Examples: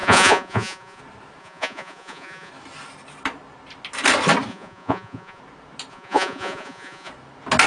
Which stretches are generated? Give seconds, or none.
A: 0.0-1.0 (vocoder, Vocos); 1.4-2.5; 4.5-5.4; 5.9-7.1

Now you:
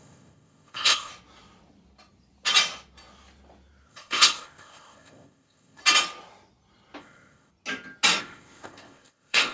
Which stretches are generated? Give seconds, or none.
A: 0.0-1.1 (codec, ZipCodec); 3.9-5.8; 7.0-7.5; 8.2-9.5

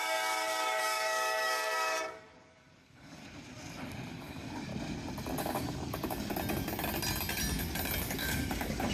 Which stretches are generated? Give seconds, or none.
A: 0.0-3.2 (codec, DAC); 4.1-4.7; 5.4-6.3; 8.0-8.9